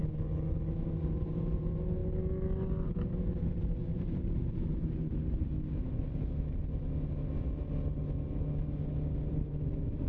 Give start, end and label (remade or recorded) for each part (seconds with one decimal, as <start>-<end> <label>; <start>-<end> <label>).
0.0-1.2 recorded; 1.2-2.0 remade; 2.0-3.4 recorded; 3.4-5.5 remade; 5.5-9.3 recorded; 9.3-10.1 remade